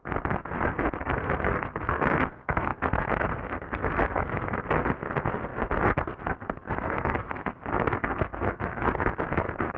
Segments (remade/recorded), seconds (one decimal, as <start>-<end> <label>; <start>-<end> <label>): 0.0-9.8 remade